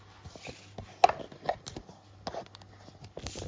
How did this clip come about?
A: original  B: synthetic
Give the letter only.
A